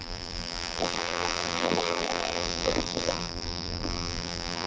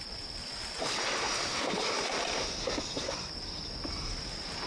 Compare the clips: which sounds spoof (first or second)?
first